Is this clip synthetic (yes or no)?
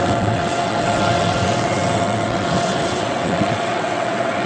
yes